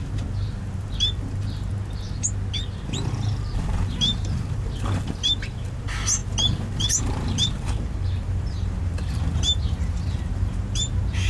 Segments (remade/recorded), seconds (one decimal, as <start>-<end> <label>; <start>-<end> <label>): 0.0-1.7 remade; 1.7-3.1 recorded; 3.1-11.3 remade